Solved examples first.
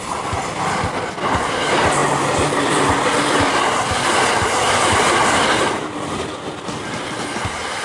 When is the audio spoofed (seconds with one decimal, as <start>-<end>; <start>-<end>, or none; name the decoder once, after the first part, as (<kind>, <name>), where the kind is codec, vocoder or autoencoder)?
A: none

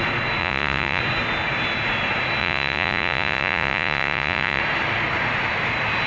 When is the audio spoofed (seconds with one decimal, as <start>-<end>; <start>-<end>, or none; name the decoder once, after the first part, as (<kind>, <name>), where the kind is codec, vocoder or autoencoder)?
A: 0.4-1.0 (vocoder, Vocos); 2.4-4.6

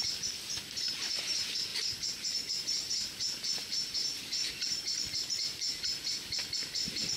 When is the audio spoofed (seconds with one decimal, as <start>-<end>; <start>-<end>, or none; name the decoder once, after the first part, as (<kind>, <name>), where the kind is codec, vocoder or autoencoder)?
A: 3.6-4.2 (vocoder, BigVGAN v2)